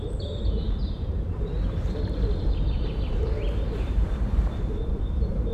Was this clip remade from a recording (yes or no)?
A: yes